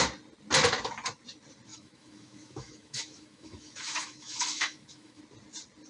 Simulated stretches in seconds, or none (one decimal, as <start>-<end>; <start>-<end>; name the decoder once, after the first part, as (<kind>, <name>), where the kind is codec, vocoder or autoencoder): 1.7-5.2 (autoencoder, DAC-VAE)